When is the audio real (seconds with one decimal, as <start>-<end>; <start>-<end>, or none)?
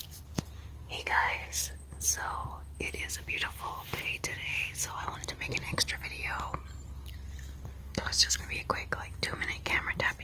0.0-1.0; 1.7-7.8; 8.4-10.2